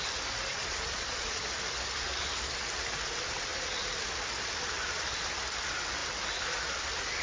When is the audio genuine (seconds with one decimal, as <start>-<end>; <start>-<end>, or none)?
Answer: 0.0-0.5; 1.4-7.2